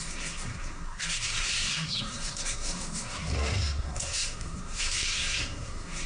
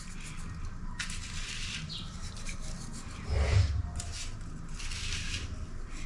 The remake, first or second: first